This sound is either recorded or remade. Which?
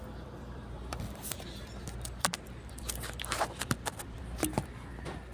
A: remade